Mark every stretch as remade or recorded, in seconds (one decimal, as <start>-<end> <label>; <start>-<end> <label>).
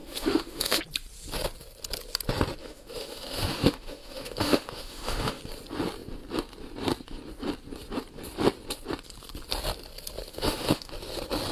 0.0-0.8 remade; 0.8-2.6 recorded; 2.6-5.4 remade; 5.4-10.3 recorded; 10.3-10.9 remade; 10.9-11.5 recorded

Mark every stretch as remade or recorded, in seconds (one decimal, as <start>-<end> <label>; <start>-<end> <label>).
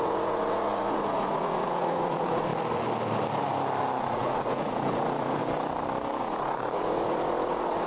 0.0-2.5 remade; 2.5-4.0 recorded; 4.0-5.4 remade; 5.4-6.2 recorded; 6.2-7.9 remade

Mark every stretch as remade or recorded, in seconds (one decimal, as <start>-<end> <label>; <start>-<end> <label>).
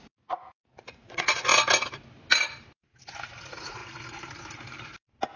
0.0-1.5 remade; 1.5-3.4 recorded; 3.4-3.8 remade; 3.8-5.4 recorded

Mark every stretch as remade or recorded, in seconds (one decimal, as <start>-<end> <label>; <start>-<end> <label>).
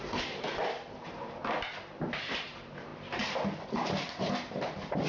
0.0-1.4 remade; 1.4-2.1 recorded; 2.1-2.9 remade; 2.9-3.6 recorded; 3.6-5.1 remade